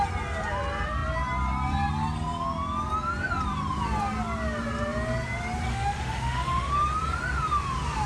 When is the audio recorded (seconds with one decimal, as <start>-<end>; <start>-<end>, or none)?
0.0-5.7; 6.7-8.1